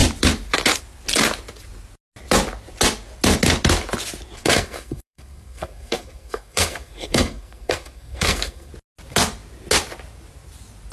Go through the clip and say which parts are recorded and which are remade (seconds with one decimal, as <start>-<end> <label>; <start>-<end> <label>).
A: 0.0-4.4 recorded; 4.4-8.7 remade; 8.7-10.9 recorded